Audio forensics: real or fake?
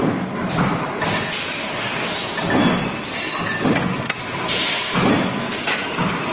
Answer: real